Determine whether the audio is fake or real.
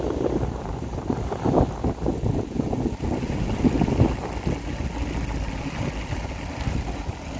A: real